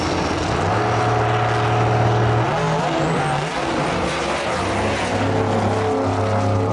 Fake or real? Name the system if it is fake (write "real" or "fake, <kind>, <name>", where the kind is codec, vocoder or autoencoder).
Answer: real